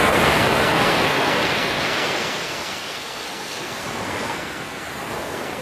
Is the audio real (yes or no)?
no